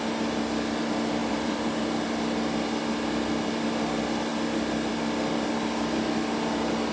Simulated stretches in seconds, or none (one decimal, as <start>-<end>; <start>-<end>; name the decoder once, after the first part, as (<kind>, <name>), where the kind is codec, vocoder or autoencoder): 1.2-1.8 (vocoder, BigVGAN v2)